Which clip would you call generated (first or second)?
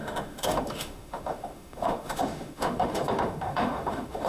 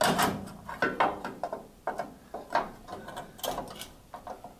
first